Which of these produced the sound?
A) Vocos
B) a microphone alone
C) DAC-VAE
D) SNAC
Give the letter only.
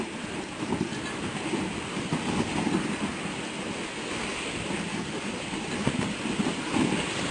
B